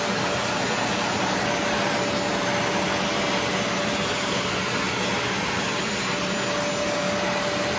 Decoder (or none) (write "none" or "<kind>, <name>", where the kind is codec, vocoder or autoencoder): none